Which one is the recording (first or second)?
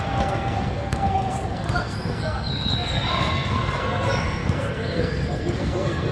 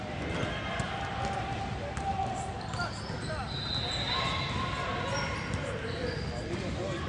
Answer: second